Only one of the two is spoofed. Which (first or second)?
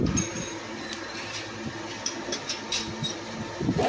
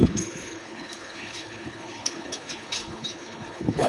second